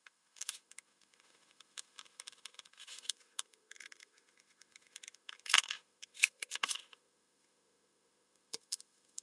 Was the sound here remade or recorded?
remade